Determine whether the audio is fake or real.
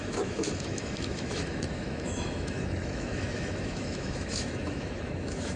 fake